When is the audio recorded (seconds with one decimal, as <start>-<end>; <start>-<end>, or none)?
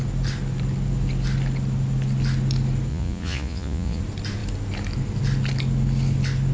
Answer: 0.0-2.9; 4.0-6.5